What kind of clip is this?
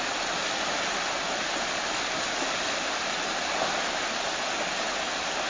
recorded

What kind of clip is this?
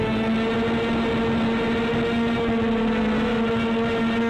recorded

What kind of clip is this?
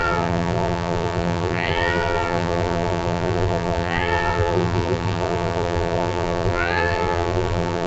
remade